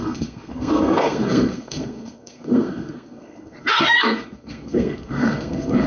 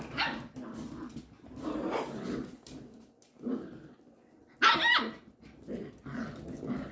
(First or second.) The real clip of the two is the second